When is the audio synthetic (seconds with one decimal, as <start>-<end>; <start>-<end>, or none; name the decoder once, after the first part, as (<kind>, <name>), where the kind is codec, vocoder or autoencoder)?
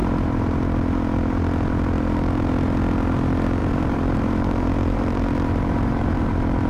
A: 3.6-6.7 (vocoder, BigVGAN v2)